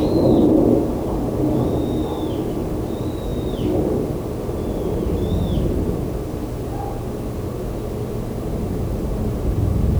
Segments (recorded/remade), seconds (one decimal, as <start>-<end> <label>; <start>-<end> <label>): 0.0-10.0 recorded